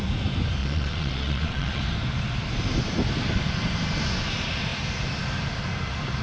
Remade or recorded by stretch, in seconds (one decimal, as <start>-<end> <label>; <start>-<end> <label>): 0.0-0.6 recorded; 0.6-1.8 remade; 1.8-6.2 recorded